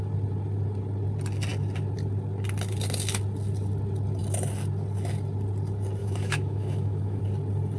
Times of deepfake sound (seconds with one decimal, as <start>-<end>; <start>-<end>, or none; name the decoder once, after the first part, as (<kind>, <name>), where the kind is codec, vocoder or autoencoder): 6.0-7.2 (autoencoder, DAC-VAE)